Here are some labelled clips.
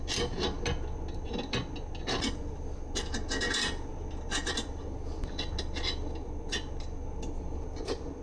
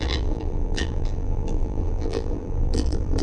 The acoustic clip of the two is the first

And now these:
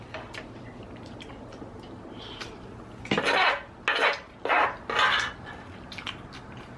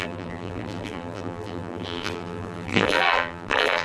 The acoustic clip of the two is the first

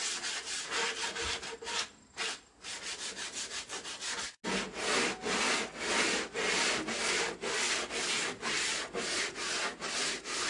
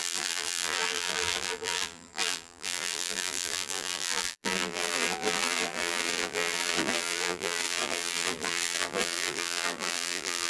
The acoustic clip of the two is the first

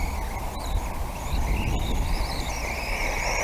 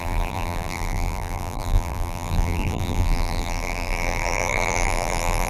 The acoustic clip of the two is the first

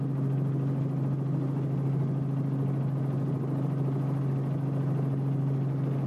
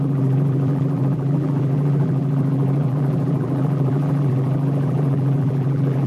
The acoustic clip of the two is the first